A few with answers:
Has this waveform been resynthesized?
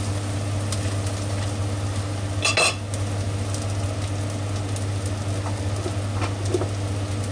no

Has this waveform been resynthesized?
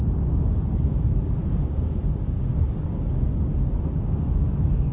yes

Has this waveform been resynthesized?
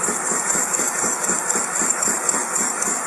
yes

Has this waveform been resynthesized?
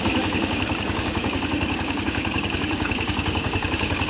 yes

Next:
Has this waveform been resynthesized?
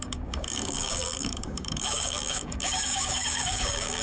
yes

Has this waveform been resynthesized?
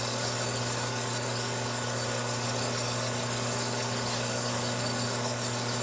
yes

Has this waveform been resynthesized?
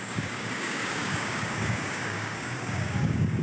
yes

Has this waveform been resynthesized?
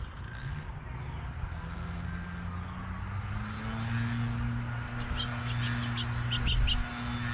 no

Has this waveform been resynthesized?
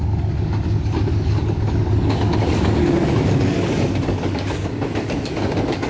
yes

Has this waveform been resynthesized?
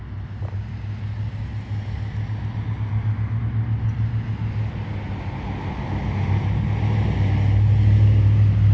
no